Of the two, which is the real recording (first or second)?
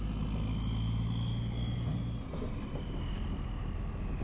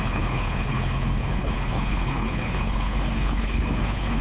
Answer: first